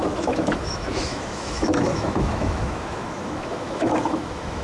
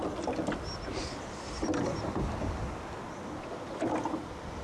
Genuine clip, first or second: second